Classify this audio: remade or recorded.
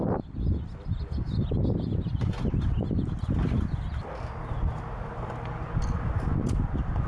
recorded